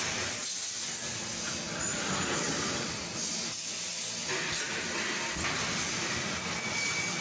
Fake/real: real